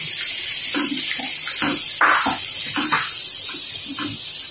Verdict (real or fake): real